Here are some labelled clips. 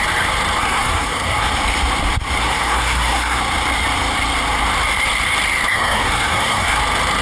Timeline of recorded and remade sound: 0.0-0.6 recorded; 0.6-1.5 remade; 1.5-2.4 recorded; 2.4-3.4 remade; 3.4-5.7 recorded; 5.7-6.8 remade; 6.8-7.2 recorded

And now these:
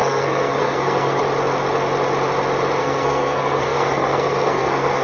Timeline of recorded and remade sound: 0.0-1.2 remade; 1.2-2.8 recorded; 2.8-5.0 remade

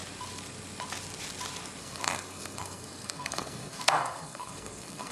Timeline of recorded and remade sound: 0.0-1.8 recorded; 1.8-5.1 remade

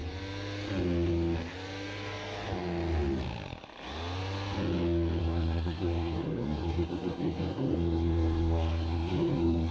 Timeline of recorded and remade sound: 0.0-5.2 recorded; 5.2-9.7 remade